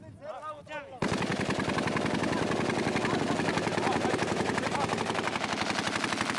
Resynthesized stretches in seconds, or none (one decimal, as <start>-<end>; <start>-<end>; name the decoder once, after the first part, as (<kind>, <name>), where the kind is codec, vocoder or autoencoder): none